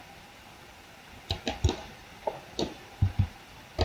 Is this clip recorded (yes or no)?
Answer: no